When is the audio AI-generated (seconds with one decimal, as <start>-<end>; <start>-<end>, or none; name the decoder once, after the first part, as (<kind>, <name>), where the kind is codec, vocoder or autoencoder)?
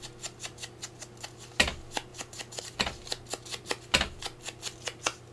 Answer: none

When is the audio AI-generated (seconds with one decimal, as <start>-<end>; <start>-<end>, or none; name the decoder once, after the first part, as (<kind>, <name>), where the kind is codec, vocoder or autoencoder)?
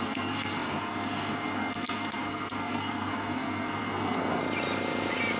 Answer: 0.0-4.4 (codec, SNAC)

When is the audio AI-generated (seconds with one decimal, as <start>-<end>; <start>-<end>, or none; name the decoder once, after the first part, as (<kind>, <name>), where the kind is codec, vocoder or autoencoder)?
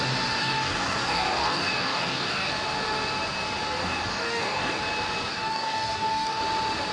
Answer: 0.4-2.5 (codec, DAC); 3.8-4.8; 5.3-6.4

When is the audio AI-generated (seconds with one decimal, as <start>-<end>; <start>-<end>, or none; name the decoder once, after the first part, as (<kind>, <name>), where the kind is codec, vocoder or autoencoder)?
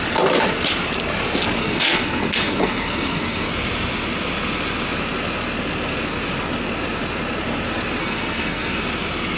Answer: 1.6-3.5 (codec, SNAC); 8.0-8.8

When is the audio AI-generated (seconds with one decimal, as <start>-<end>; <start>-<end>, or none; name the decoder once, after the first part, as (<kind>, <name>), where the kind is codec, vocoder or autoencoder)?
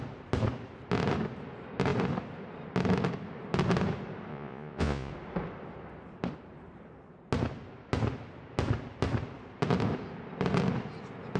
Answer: 4.3-5.1 (vocoder, Vocos)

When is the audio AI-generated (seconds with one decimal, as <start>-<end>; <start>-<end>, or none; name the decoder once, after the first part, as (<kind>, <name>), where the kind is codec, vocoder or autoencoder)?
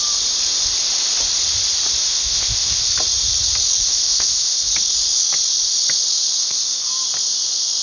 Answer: 2.1-2.9 (codec, ZipCodec); 3.8-4.7; 6.4-6.9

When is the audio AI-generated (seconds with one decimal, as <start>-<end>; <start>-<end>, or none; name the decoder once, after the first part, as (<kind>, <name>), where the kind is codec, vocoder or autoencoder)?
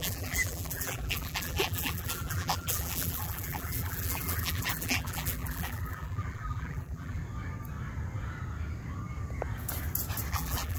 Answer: 0.0-7.2 (vocoder, BigVGAN v2); 10.3-10.8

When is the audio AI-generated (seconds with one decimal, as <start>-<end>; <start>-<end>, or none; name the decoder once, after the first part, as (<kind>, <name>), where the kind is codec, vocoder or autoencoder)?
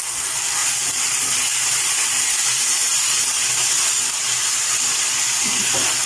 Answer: none